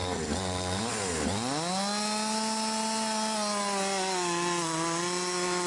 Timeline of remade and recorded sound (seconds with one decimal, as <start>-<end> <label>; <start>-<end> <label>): 0.0-5.7 recorded